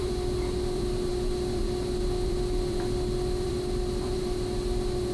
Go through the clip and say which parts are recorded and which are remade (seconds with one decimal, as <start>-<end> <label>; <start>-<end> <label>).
0.0-5.1 remade